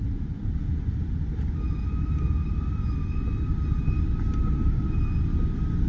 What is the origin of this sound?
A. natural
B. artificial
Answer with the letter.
A